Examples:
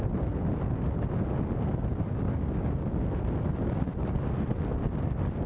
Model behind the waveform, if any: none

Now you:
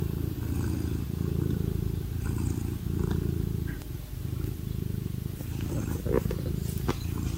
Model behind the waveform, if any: none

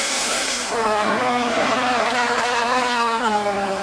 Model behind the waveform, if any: codec, SNAC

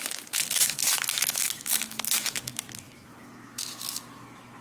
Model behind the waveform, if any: autoencoder, DAC-VAE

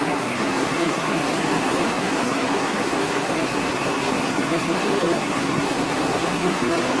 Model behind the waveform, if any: codec, SNAC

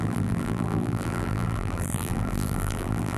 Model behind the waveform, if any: vocoder, BigVGAN v2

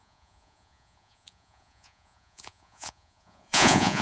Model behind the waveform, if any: vocoder, Vocos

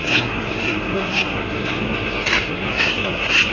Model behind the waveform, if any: codec, SNAC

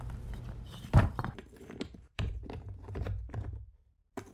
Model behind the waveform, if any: vocoder, BigVGAN v2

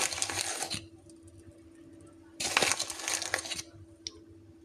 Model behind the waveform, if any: none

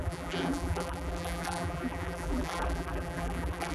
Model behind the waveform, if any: vocoder, BigVGAN v2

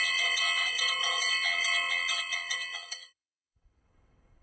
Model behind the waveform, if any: vocoder, WaveNeXt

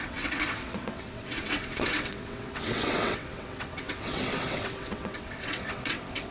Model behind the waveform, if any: vocoder, WaveNeXt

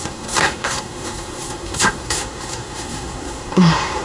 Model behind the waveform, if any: codec, SNAC